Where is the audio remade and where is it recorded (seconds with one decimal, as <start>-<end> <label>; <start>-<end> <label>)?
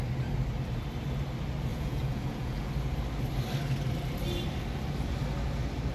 0.0-1.7 recorded; 1.7-2.7 remade; 2.7-5.9 recorded